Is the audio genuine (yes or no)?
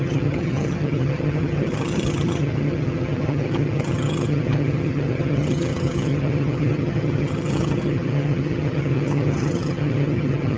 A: no